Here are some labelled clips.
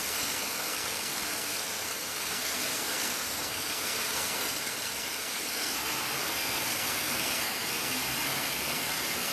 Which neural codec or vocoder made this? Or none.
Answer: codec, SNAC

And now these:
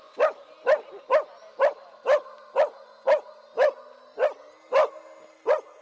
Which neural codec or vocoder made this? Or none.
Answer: none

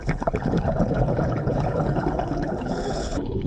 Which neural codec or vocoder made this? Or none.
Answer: codec, HILCodec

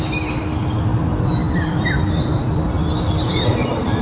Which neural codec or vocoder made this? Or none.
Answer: none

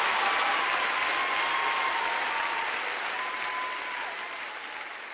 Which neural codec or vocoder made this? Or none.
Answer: none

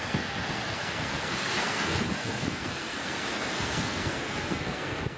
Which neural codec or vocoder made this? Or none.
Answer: codec, SNAC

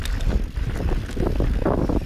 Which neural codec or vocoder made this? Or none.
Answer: none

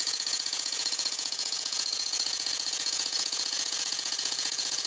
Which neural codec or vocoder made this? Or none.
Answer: vocoder, Vocos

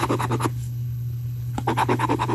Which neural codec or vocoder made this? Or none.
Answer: codec, HILCodec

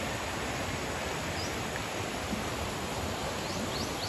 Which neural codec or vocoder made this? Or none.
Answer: none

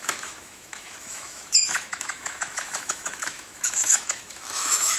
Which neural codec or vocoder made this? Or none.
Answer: autoencoder, DAC-VAE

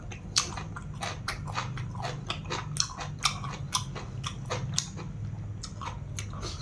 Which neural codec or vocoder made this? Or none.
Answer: none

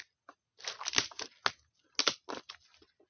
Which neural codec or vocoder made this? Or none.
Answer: none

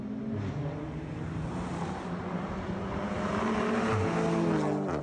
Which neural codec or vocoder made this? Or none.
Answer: none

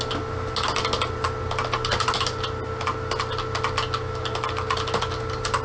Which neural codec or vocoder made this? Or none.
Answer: none